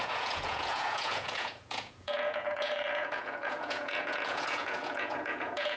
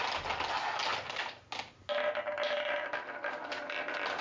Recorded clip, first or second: second